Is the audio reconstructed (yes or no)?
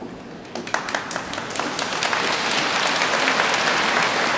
no